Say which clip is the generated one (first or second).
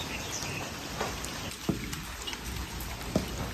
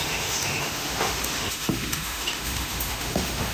second